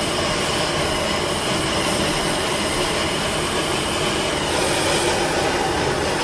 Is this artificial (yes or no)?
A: no